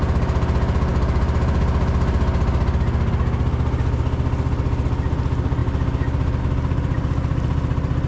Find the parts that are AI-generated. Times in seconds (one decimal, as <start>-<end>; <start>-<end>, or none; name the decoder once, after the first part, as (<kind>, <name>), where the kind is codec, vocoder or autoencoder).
none